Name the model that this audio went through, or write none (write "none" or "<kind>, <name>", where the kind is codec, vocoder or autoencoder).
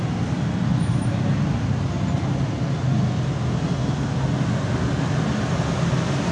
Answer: none